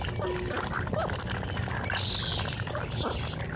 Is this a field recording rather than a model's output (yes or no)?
yes